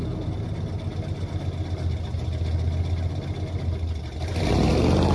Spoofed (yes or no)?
no